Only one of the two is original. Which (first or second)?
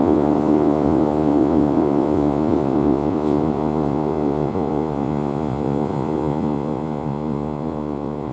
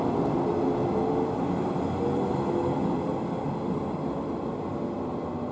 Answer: second